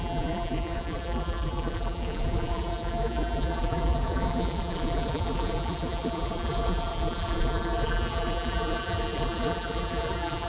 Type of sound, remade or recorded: remade